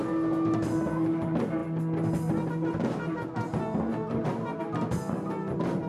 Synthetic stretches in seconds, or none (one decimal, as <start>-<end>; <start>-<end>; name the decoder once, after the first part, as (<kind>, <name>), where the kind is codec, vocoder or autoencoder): none